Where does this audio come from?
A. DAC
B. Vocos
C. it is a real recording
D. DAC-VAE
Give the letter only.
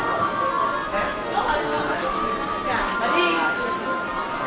C